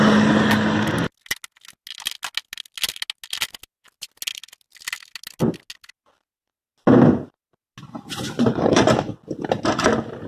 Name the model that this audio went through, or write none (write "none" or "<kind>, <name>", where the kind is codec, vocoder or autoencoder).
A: none